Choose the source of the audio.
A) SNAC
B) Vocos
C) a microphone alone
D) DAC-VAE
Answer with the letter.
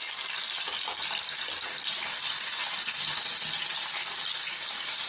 C